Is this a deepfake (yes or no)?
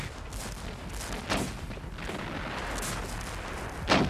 no